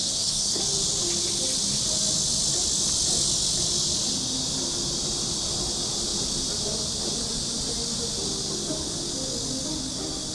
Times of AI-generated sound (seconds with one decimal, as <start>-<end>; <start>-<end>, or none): 0.0-0.6